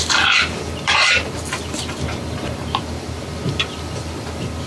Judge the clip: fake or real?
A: fake